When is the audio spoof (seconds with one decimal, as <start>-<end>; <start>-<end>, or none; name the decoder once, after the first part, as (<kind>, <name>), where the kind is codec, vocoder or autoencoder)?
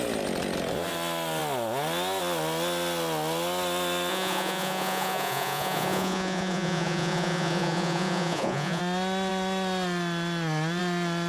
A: 4.1-8.8 (vocoder, Vocos)